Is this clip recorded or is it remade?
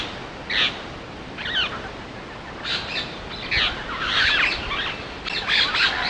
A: recorded